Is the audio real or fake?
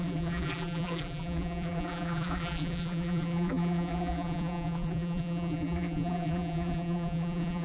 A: fake